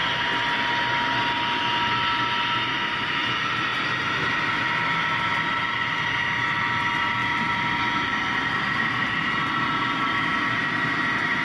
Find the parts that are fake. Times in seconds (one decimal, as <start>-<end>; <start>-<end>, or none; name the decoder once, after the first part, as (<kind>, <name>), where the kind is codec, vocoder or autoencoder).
none